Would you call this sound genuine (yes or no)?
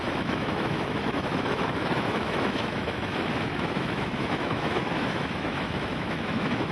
no